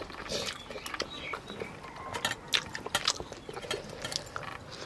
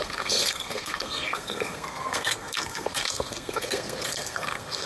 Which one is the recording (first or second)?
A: first